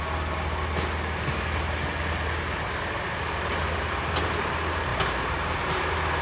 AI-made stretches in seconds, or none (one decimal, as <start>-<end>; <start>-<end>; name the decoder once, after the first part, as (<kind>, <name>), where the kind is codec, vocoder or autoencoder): none